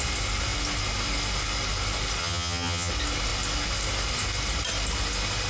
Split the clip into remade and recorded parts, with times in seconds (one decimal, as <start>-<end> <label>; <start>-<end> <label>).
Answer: 0.0-2.2 recorded; 2.2-2.9 remade; 2.9-5.5 recorded